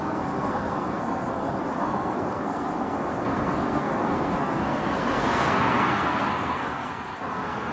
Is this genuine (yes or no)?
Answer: no